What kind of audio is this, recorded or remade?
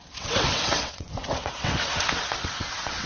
remade